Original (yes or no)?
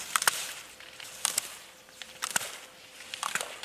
no